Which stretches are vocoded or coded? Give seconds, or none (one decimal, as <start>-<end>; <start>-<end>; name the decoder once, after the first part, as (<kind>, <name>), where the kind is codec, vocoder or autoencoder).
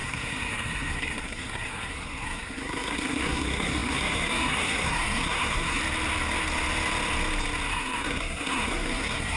0.0-5.8 (codec, SNAC); 7.7-9.4